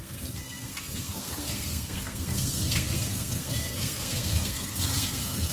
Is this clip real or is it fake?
fake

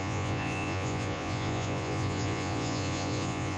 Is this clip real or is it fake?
fake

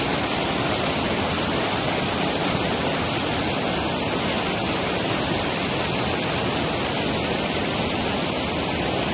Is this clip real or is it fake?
real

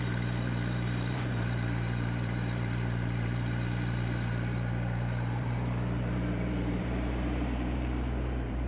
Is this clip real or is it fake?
fake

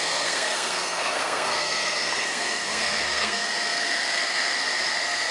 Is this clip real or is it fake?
fake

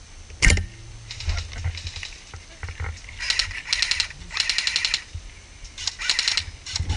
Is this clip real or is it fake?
real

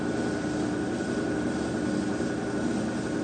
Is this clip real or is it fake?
real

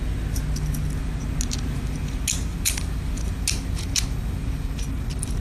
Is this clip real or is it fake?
real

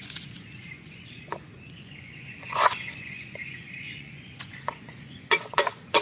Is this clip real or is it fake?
fake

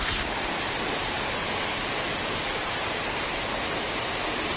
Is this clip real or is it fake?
real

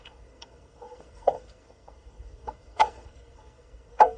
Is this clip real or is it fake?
fake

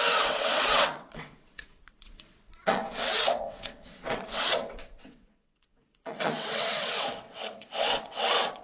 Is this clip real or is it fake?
fake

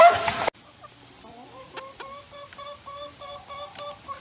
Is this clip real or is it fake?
real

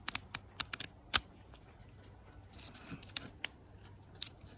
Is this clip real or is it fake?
real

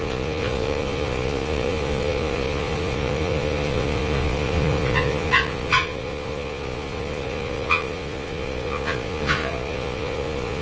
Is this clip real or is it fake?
fake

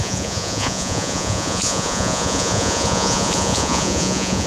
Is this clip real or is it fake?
fake